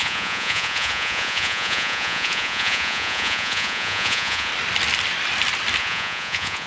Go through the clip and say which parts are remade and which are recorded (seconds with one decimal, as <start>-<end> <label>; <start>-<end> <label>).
0.0-4.5 remade; 4.5-5.8 recorded; 5.8-6.7 remade